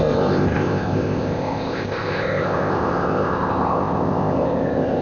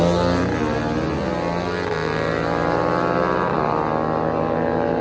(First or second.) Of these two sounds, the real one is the second